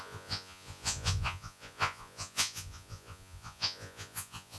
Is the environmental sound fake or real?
fake